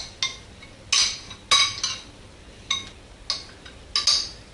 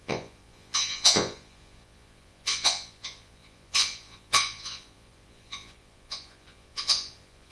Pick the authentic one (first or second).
first